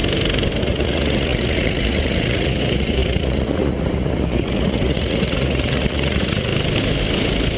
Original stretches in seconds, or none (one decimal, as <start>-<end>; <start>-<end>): 0.0-0.6; 6.5-7.6